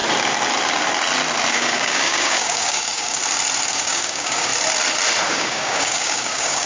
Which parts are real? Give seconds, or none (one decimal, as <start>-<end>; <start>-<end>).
0.0-1.5; 3.2-3.7; 4.5-5.3